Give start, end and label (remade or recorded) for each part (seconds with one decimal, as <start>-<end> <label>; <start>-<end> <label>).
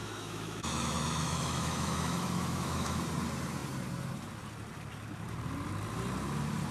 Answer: 0.0-3.0 remade; 3.0-6.7 recorded